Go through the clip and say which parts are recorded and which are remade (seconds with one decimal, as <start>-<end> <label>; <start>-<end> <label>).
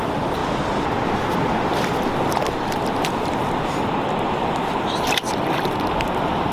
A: 0.0-0.4 remade; 0.4-3.4 recorded; 3.4-6.5 remade